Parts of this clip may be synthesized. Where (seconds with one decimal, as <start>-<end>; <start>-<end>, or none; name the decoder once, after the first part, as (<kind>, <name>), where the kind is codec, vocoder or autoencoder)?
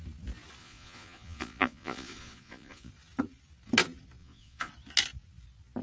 0.6-2.9 (vocoder, Vocos); 4.2-4.7